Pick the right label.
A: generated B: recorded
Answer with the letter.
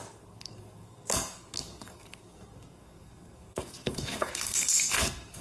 A